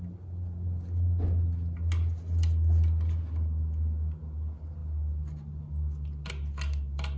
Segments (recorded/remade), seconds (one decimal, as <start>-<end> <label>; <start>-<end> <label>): 0.0-7.2 recorded